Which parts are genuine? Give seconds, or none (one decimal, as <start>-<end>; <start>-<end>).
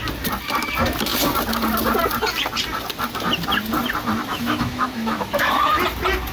0.0-4.3; 5.8-6.3